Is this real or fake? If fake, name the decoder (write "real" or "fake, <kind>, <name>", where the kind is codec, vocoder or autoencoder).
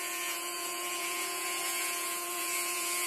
fake, vocoder, Vocos